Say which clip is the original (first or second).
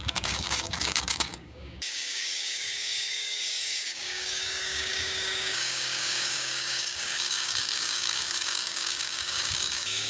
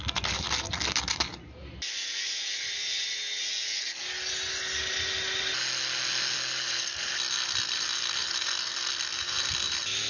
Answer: second